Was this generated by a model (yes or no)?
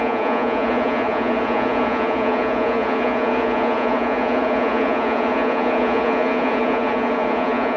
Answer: yes